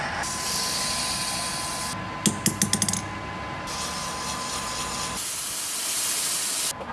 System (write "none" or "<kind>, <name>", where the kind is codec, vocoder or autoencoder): none